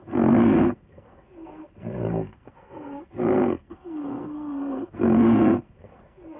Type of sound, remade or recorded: remade